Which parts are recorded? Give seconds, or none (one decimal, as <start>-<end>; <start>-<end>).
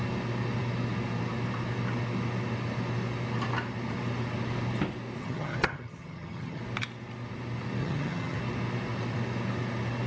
0.0-5.2; 6.6-7.8; 8.4-10.1